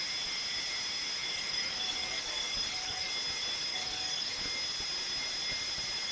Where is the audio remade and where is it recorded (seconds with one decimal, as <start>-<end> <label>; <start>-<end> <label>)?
0.0-1.2 recorded; 1.2-3.1 remade; 3.1-3.7 recorded; 3.7-4.4 remade; 4.4-6.1 recorded